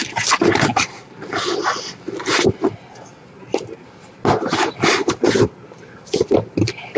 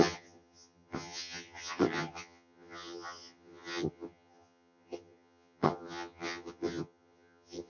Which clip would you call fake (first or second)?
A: second